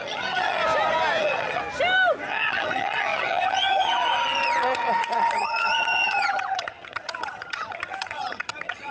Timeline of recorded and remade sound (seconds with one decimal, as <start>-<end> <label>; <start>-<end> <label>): 0.0-0.6 remade; 0.6-1.2 recorded; 1.2-1.6 remade; 1.6-2.3 recorded; 2.3-8.9 remade